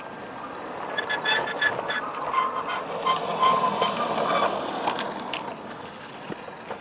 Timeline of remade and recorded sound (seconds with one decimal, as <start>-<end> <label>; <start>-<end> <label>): 0.0-6.8 recorded